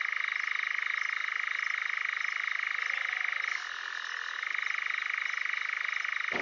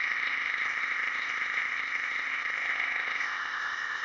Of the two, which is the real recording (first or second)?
first